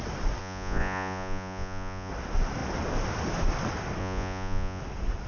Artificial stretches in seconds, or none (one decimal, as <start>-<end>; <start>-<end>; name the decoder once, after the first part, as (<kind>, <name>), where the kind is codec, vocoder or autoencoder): 0.4-2.1 (vocoder, Vocos); 4.0-4.8